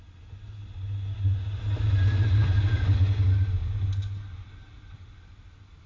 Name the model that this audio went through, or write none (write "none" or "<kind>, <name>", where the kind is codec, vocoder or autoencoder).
none